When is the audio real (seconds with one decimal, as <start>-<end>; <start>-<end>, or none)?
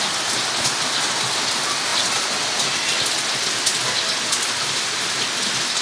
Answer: 0.0-5.8